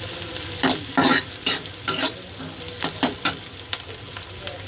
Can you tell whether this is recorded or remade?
recorded